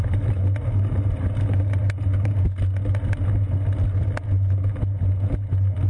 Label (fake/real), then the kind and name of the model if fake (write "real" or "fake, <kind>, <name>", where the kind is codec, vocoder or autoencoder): real